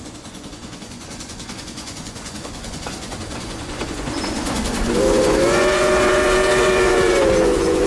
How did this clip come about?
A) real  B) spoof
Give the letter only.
B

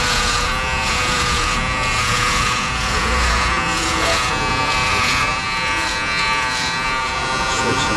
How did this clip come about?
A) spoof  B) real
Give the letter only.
A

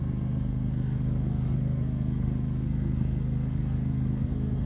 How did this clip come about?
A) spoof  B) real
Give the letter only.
A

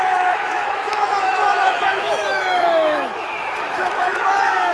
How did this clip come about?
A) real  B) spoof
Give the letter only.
B